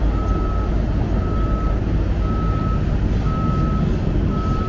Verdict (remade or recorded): recorded